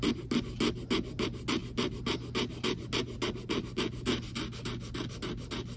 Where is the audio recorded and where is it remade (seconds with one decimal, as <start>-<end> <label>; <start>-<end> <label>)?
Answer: 0.0-5.8 recorded